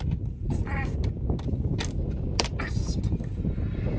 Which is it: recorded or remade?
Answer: recorded